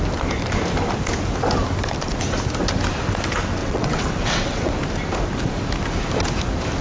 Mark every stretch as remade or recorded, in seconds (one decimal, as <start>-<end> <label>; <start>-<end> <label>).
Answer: 0.0-3.6 recorded; 3.6-4.7 remade; 4.7-6.8 recorded